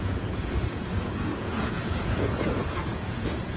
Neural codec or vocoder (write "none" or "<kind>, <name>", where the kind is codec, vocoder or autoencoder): vocoder, Vocos